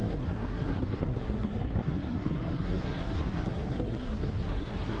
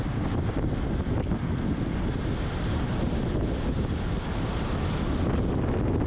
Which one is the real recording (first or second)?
second